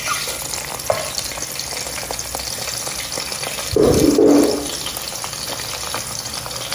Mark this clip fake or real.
real